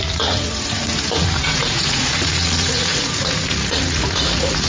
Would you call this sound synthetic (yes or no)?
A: yes